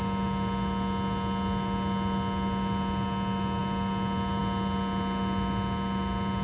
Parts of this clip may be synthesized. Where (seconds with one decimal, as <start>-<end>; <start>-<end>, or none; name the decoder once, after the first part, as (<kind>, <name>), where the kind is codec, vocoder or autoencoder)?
none